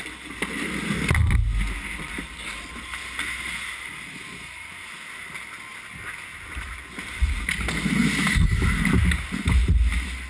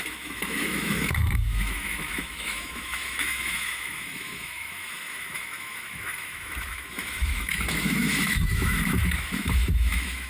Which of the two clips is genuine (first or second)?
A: first